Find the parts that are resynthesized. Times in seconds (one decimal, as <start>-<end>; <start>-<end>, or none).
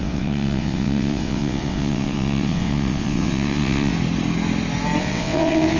0.0-3.9; 5.0-5.8